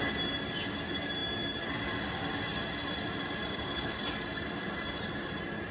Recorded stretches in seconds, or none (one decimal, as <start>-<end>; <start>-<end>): 0.0-3.5; 4.0-5.7